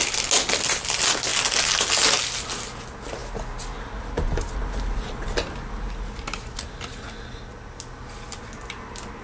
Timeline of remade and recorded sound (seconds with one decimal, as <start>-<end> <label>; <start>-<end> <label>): 0.0-9.2 recorded